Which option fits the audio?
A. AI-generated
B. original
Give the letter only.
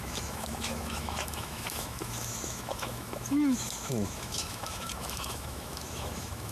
A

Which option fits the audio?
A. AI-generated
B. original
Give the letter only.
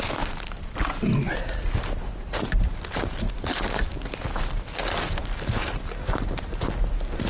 B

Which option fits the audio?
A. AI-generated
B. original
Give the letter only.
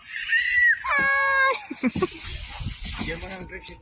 B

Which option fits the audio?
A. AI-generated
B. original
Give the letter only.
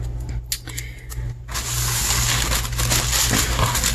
B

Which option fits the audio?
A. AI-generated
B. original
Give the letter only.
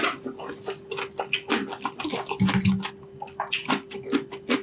B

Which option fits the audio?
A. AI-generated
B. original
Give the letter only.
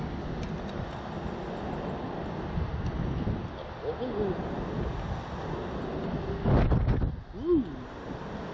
B